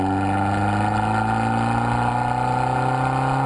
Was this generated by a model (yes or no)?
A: no